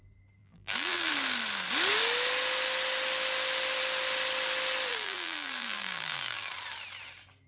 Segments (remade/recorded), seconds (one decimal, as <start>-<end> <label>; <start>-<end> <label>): 0.0-0.4 recorded; 0.4-1.1 remade; 1.1-4.9 recorded; 4.9-6.5 remade; 6.5-7.5 recorded